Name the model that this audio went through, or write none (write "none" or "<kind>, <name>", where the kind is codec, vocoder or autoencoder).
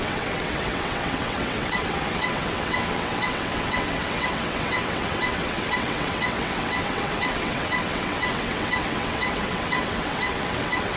vocoder, WaveNeXt